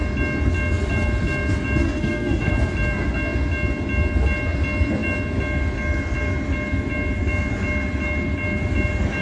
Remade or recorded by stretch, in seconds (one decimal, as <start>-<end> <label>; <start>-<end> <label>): 0.0-1.8 recorded; 1.8-2.5 remade; 2.5-9.2 recorded